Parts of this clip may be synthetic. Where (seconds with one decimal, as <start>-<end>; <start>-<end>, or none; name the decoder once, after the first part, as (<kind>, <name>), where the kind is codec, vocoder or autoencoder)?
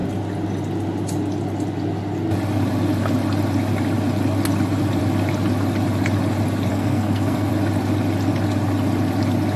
6.7-7.5 (codec, SNAC)